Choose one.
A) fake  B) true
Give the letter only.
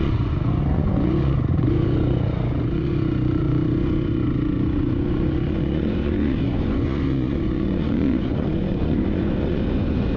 A